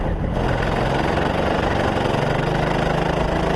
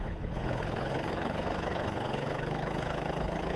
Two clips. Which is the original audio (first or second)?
first